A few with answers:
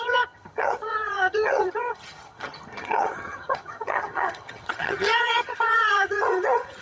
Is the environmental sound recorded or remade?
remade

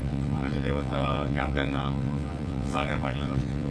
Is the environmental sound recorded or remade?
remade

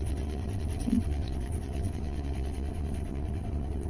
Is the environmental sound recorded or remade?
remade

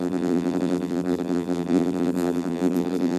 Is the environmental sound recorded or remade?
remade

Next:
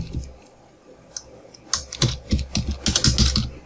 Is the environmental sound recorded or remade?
recorded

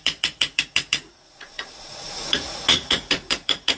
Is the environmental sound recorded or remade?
remade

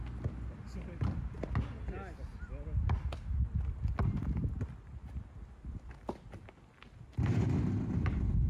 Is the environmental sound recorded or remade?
recorded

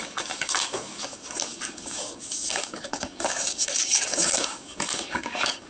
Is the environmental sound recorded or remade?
remade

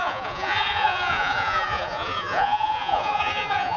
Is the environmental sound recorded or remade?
remade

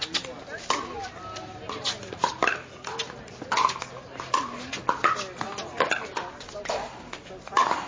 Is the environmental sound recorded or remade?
recorded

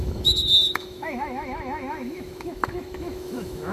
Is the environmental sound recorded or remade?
remade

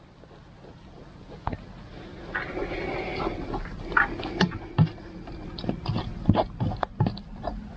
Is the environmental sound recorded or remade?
recorded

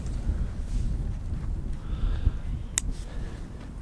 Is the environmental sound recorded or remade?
recorded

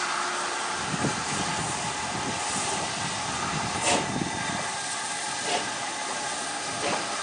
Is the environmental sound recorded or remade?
recorded